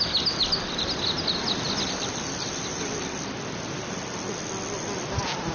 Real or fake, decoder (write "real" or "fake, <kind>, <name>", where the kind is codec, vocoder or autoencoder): real